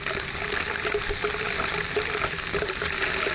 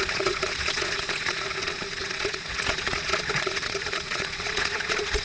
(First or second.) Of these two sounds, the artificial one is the second